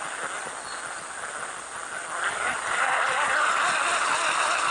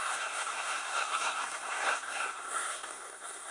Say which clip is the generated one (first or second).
second